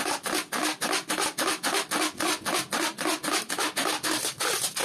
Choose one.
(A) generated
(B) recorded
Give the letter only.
B